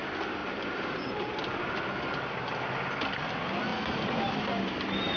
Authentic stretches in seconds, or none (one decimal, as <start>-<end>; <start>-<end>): 0.0-0.4; 1.6-3.7; 4.3-5.2